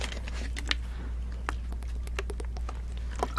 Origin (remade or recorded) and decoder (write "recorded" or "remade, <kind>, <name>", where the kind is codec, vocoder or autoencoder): recorded